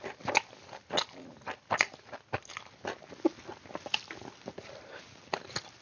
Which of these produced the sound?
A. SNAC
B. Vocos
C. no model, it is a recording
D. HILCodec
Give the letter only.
C